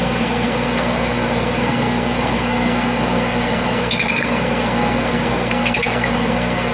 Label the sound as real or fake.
fake